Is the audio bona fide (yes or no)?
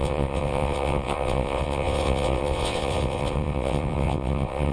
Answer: no